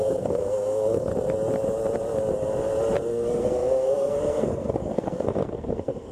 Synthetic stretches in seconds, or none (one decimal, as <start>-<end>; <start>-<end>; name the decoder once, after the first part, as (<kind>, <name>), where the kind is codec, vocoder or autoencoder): 0.0-1.1 (codec, SNAC); 3.1-6.1